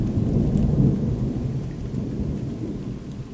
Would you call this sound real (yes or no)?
yes